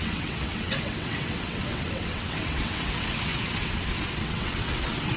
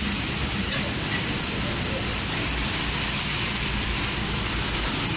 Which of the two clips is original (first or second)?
second